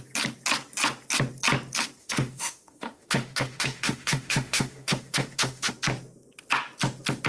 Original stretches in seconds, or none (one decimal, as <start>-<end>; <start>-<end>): 0.0-2.0; 5.7-7.3